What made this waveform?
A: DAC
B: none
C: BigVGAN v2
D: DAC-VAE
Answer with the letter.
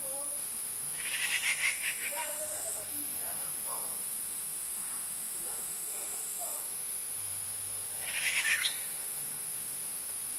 D